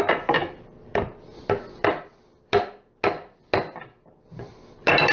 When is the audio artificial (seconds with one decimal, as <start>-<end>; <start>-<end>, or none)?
none